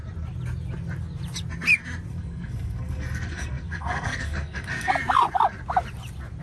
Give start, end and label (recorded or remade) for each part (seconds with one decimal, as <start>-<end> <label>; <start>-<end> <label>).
0.0-2.1 recorded; 2.1-4.9 remade; 4.9-6.4 recorded